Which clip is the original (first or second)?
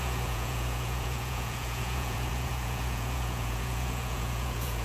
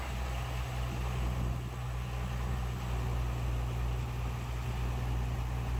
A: second